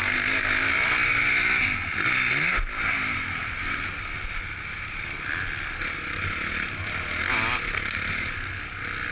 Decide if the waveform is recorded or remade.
recorded